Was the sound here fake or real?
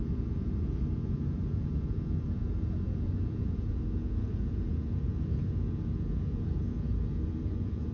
fake